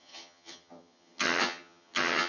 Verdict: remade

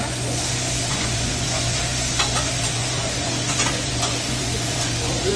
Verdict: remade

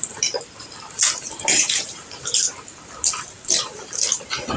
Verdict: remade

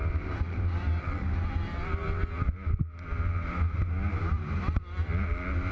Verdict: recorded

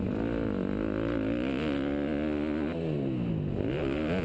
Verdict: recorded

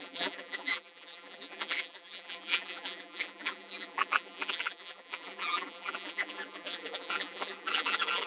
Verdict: remade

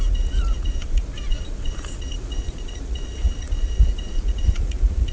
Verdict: remade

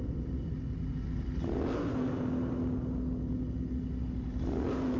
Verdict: recorded